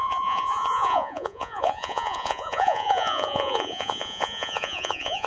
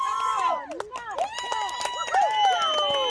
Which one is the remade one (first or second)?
first